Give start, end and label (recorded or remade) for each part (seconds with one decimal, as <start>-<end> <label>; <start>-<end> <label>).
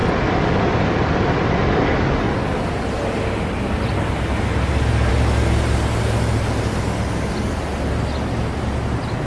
0.0-9.3 recorded